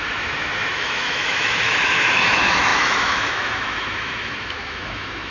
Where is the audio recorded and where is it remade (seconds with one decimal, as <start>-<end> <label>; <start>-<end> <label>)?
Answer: 0.0-5.3 remade